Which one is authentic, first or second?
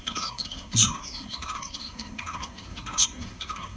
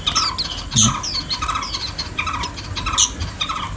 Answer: second